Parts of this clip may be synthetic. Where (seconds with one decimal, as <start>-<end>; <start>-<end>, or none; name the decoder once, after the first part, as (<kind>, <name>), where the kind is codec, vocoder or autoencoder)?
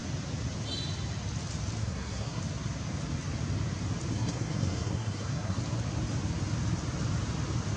1.8-2.4 (codec, SNAC); 4.1-5.6